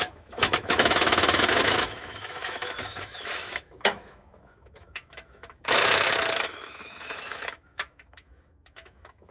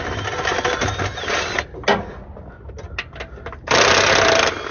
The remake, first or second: first